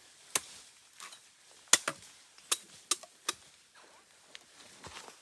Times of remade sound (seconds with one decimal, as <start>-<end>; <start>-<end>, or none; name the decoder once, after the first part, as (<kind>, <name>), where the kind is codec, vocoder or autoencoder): none

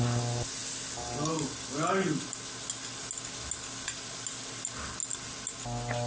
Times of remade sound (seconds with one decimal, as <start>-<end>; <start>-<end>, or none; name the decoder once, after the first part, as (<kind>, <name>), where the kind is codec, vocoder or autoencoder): none

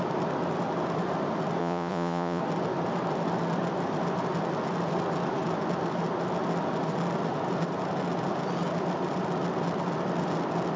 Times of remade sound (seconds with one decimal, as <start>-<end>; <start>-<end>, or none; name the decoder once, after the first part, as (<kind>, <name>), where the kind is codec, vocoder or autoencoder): 1.6-2.4 (vocoder, Vocos)

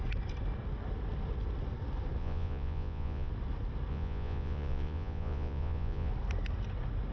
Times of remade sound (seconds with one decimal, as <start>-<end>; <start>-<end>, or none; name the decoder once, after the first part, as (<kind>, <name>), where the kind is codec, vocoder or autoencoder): 2.2-3.3 (vocoder, Vocos); 3.9-6.1

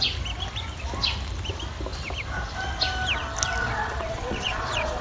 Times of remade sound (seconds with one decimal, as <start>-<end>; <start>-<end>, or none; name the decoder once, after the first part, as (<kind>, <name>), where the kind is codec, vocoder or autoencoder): 3.6-5.0 (vocoder, Vocos)

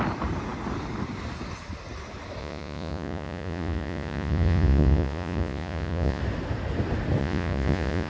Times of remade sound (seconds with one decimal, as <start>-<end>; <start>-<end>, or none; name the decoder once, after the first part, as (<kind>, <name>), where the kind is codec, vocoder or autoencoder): 2.4-6.2 (vocoder, Vocos); 7.2-8.1

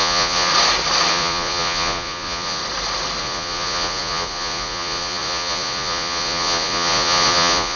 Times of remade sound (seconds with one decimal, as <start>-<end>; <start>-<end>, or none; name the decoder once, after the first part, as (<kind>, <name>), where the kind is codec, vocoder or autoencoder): 0.0-0.5 (vocoder, Vocos); 1.1-2.6; 3.2-7.8

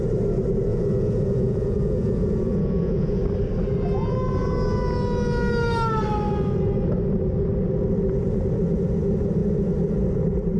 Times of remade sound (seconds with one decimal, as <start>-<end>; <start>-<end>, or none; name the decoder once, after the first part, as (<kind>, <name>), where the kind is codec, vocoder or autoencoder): 0.7-3.2 (vocoder, Vocos)